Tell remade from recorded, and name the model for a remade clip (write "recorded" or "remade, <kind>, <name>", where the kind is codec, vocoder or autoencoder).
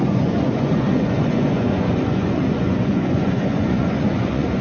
remade, vocoder, Vocos